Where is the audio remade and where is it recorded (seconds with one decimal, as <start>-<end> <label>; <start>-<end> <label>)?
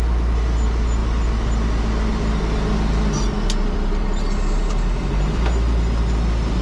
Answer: 0.0-6.6 recorded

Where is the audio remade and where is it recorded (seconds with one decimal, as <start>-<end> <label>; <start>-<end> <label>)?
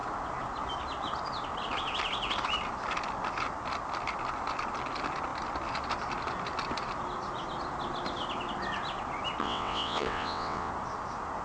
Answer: 0.0-9.4 recorded; 9.4-10.7 remade; 10.7-11.4 recorded